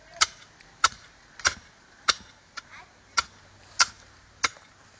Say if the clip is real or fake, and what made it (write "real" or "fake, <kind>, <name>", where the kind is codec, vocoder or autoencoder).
fake, vocoder, BigVGAN v2